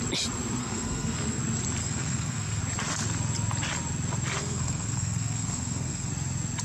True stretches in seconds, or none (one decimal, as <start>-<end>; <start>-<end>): 0.0-0.6; 1.4-1.8; 2.6-4.4; 6.1-6.6